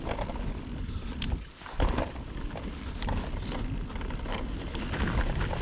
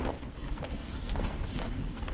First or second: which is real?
first